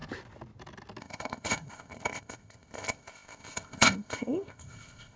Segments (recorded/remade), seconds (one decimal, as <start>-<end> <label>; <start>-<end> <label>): 0.0-1.0 recorded; 1.0-5.2 remade